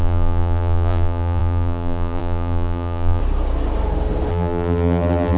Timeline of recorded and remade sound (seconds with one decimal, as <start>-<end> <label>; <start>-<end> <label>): 0.0-3.2 remade; 3.2-4.3 recorded; 4.3-5.4 remade